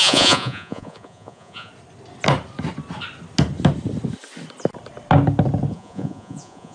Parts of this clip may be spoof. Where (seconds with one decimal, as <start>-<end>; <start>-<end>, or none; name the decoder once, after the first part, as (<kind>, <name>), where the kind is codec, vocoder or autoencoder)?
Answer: 0.0-1.7 (vocoder, Vocos); 5.7-6.7